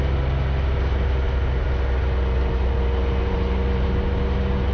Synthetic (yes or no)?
no